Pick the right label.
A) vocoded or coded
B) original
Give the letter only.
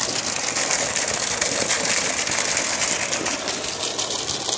B